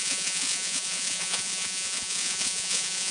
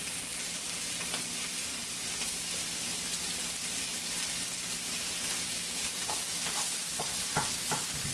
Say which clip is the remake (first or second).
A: first